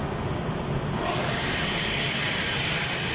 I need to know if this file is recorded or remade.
recorded